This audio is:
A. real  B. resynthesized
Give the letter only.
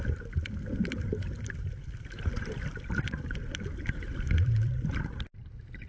B